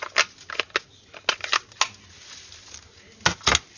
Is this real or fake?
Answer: real